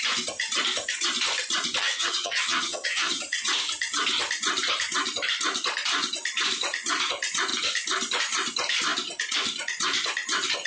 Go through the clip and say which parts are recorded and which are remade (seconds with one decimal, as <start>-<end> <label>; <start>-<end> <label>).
0.0-1.8 recorded; 1.8-3.2 remade; 3.2-10.7 recorded